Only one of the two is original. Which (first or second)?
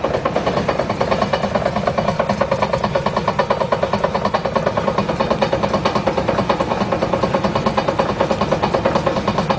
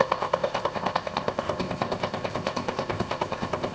first